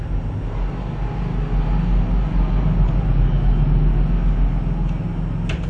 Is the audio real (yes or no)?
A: yes